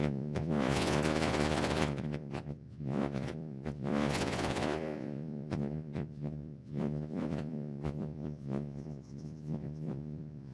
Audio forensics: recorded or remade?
remade